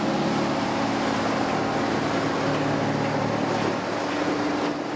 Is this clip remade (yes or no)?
no